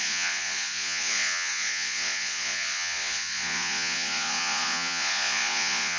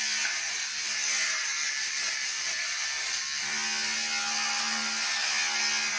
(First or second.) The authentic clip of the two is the second